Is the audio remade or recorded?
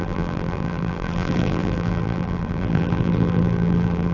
remade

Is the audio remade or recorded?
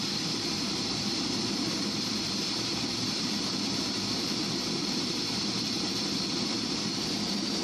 remade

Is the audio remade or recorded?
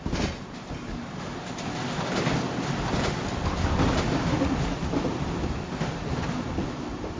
recorded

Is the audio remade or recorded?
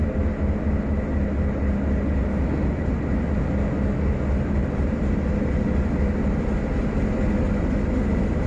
recorded